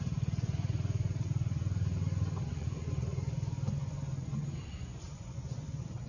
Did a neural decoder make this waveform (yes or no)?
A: yes